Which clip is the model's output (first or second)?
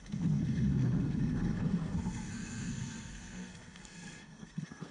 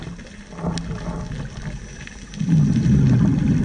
first